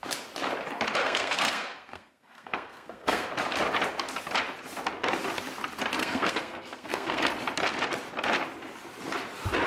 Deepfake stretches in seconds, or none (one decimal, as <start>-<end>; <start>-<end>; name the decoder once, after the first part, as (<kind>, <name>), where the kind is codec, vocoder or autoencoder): 1.0-3.3 (codec, SNAC); 6.0-7.3